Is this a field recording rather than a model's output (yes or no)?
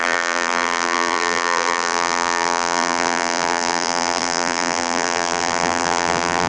no